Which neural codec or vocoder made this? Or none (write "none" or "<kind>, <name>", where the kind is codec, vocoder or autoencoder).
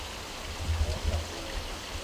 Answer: none